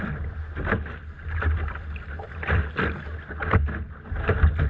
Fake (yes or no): no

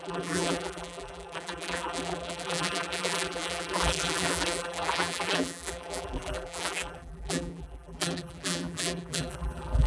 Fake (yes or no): yes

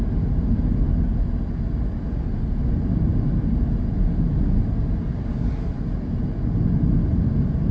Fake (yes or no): no